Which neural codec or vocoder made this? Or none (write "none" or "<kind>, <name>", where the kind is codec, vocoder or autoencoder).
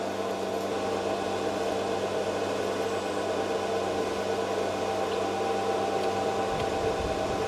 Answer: none